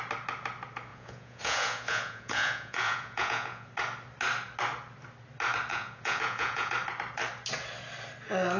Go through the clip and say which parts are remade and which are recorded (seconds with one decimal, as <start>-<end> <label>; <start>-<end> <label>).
0.0-0.9 recorded; 0.9-3.7 remade; 3.7-5.7 recorded; 5.7-6.7 remade; 6.7-8.6 recorded